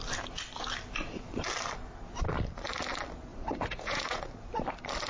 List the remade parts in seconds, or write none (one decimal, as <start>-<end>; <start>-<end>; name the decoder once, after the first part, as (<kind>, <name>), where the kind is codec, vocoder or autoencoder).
3.3-4.3 (vocoder, Vocos)